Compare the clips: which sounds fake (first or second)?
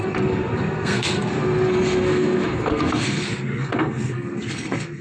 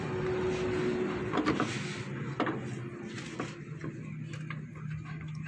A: first